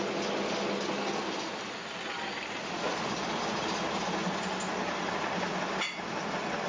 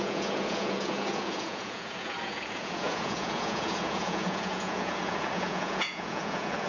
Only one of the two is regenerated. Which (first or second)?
second